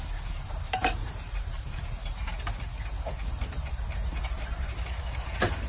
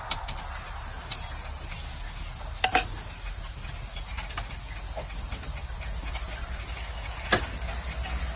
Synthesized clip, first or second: first